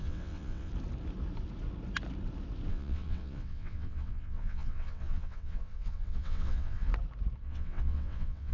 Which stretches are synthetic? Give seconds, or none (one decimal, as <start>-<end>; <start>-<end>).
0.0-0.7; 2.7-6.9; 7.4-8.5